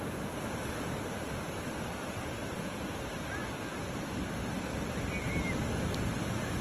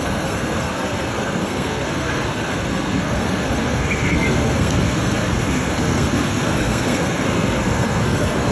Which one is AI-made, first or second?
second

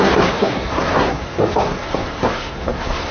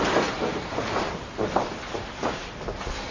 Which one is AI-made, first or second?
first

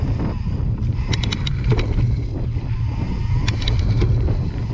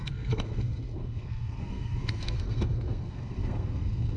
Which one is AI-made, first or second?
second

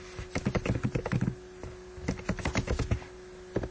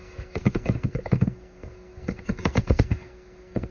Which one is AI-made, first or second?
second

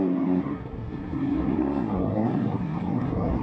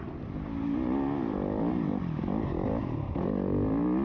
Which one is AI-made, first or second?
first